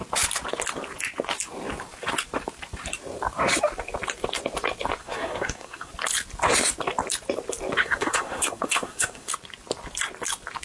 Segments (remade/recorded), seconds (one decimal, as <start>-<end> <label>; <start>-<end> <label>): 0.0-5.0 recorded; 5.0-5.9 remade; 5.9-7.8 recorded; 7.8-9.3 remade; 9.3-10.6 recorded